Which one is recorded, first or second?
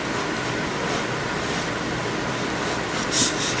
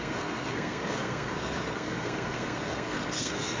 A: first